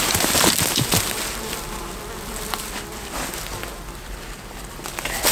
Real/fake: real